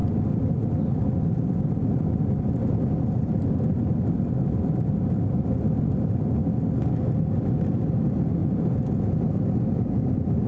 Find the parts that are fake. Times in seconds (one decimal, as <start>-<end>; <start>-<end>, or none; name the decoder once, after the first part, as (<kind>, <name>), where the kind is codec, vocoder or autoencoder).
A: 8.4-9.2 (vocoder, Vocos)